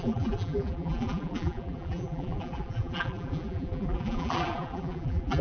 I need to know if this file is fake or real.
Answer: fake